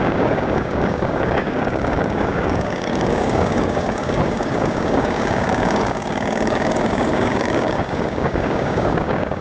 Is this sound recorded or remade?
remade